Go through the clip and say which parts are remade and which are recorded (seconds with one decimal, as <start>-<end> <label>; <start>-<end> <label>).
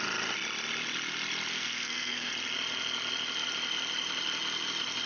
0.0-1.5 recorded; 1.5-2.3 remade; 2.3-5.1 recorded